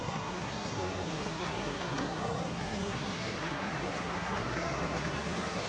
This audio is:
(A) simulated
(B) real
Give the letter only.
A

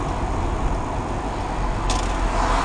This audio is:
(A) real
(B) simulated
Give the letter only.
A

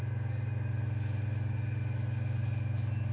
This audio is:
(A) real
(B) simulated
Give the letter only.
A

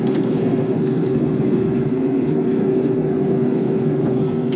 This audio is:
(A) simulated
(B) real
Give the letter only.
A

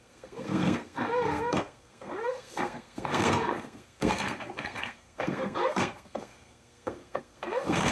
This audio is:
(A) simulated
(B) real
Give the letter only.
A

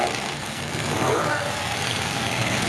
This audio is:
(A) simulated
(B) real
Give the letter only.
A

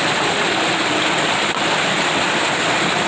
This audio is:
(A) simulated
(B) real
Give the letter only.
B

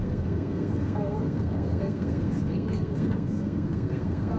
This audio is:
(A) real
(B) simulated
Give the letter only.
B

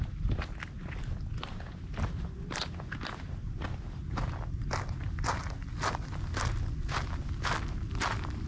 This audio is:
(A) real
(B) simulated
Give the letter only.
A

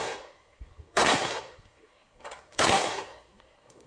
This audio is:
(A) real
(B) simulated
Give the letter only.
B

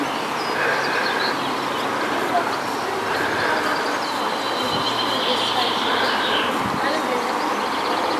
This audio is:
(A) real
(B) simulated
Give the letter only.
A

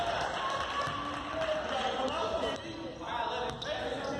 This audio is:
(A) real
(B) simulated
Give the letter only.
A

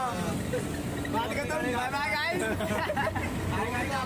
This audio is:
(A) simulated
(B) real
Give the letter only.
B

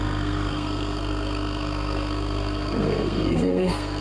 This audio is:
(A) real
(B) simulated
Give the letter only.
B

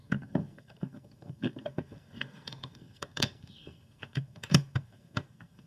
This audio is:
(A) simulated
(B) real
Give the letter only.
A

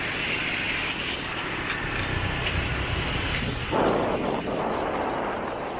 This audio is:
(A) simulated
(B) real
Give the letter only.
B